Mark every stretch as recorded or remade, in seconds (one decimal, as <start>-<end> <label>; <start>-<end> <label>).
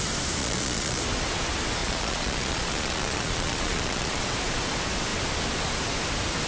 0.0-0.4 recorded; 0.4-1.0 remade; 1.0-1.8 recorded; 1.8-4.2 remade; 4.2-6.5 recorded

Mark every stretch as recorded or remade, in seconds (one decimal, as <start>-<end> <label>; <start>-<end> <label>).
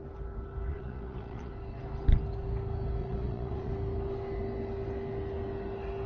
0.0-0.7 recorded; 0.7-1.5 remade; 1.5-3.0 recorded; 3.0-3.7 remade; 3.7-6.1 recorded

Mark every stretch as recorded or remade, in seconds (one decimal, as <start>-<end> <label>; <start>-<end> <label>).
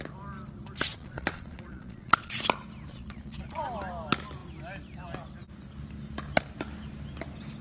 0.0-0.9 recorded; 0.9-2.4 remade; 2.4-2.9 recorded; 2.9-3.6 remade; 3.6-7.6 recorded